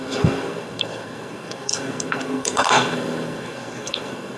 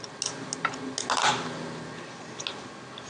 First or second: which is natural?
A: second